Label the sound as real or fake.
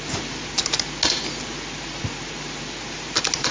real